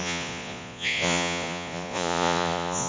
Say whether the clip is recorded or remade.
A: remade